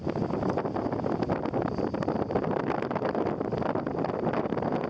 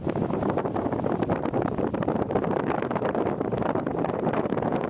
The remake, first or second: second